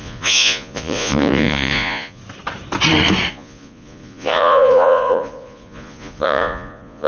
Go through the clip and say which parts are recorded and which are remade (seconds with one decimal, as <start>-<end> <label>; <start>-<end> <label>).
0.0-2.2 remade; 2.2-3.3 recorded; 3.3-7.1 remade